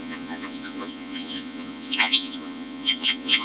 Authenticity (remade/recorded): remade